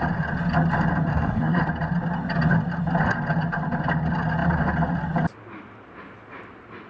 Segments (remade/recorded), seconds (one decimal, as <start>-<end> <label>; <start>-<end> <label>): 0.0-1.1 recorded; 1.1-1.6 remade; 1.6-6.9 recorded